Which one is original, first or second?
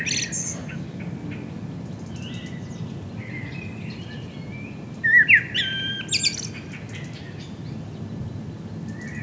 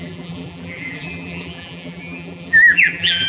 first